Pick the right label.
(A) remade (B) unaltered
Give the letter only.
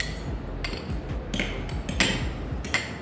B